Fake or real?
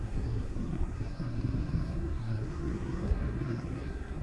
fake